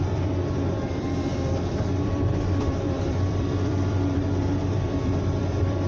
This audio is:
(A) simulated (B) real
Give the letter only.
A